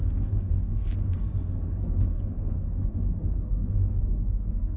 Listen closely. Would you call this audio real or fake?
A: fake